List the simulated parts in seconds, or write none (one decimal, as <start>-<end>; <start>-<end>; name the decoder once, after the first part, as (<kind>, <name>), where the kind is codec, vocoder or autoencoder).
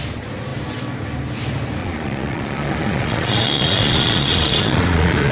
1.8-5.3 (vocoder, Vocos)